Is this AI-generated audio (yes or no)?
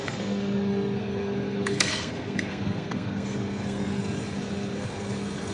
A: yes